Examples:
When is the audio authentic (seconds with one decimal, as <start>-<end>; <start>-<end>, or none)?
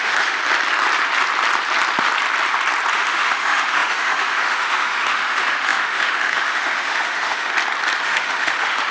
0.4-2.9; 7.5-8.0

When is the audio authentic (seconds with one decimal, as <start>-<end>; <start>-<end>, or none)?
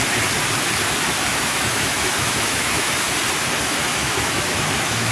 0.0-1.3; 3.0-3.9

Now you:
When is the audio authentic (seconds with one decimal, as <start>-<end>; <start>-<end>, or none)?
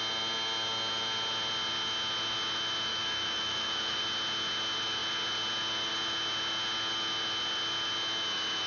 0.0-2.9; 4.0-8.7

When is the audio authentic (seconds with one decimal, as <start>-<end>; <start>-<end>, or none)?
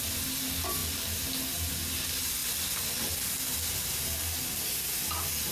0.0-5.5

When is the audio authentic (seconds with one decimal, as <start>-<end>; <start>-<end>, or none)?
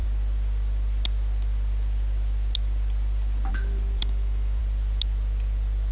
0.0-4.0; 4.6-5.9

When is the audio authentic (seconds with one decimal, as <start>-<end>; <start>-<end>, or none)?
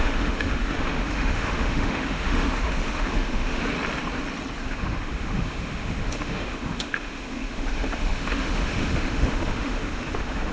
3.6-4.6